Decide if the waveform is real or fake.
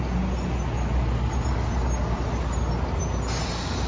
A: real